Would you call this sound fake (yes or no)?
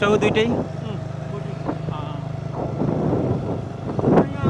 no